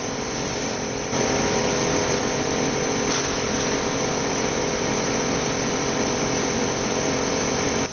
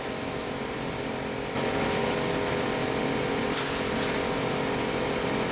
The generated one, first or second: first